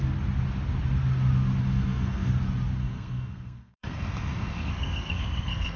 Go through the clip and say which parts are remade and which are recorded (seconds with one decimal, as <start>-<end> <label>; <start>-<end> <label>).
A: 0.0-1.7 recorded; 1.7-2.3 remade; 2.3-2.8 recorded; 2.8-5.8 remade